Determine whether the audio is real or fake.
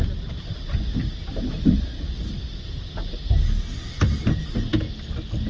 real